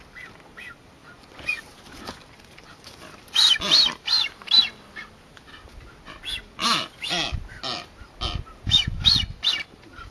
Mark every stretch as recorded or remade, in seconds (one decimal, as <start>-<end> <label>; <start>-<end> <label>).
0.0-1.0 recorded; 1.0-1.6 remade; 1.6-10.1 recorded